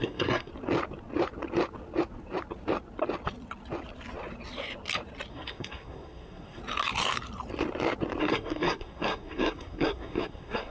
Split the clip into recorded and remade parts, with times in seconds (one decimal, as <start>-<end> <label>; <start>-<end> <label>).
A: 0.0-0.5 remade; 0.5-5.3 recorded; 5.3-6.6 remade; 6.6-8.2 recorded; 8.2-10.7 remade